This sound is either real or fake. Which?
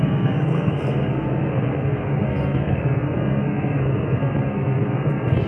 fake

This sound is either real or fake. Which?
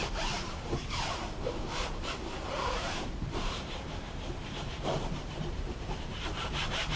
fake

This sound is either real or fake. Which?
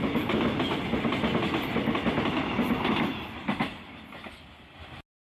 real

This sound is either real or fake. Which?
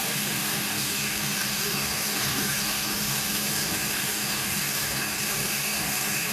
fake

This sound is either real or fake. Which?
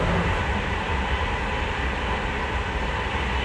real